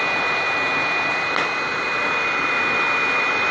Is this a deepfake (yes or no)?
no